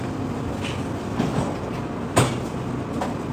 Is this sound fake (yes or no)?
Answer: no